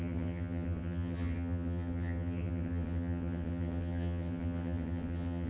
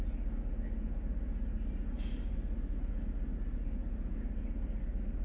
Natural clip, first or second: second